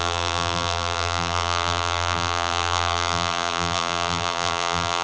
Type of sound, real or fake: fake